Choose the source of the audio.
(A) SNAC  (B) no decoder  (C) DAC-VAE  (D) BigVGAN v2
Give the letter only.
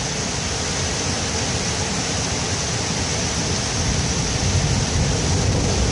B